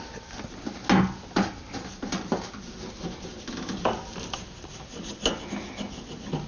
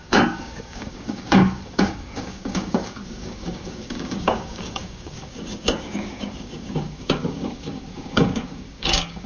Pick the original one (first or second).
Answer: first